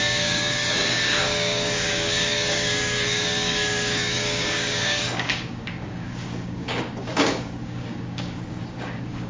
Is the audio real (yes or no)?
no